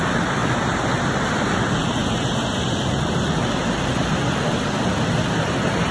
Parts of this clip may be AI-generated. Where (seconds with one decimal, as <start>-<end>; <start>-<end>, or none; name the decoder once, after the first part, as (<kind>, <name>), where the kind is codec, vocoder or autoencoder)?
none